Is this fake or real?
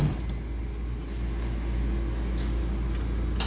real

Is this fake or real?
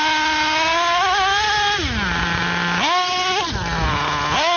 real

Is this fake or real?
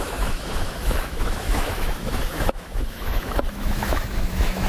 fake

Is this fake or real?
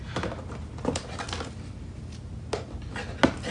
real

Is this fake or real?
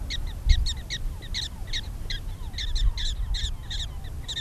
real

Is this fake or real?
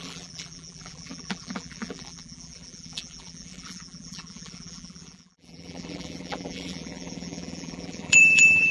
fake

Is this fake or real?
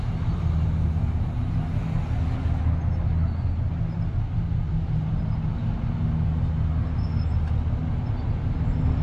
real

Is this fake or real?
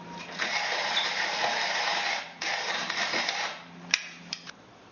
fake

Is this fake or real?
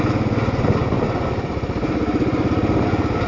real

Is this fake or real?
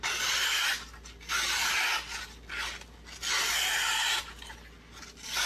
real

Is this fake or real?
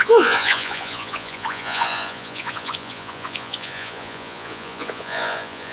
fake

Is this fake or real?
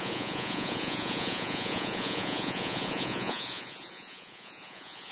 fake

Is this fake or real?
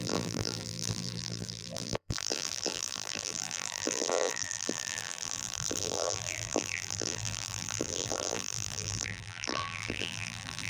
fake